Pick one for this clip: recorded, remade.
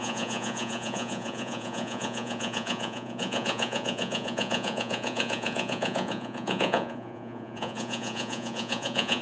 remade